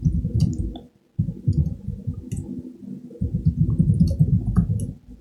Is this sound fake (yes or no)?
no